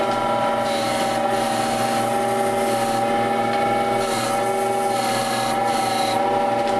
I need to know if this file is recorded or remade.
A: recorded